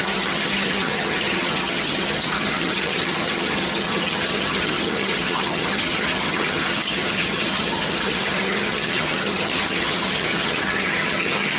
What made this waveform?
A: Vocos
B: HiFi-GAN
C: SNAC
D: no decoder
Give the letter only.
B